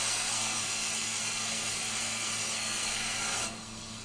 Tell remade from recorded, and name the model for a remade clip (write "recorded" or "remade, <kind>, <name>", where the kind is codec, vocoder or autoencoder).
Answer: remade, codec, SNAC